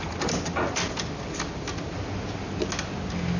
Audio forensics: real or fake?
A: real